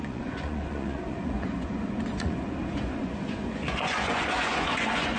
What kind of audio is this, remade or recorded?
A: remade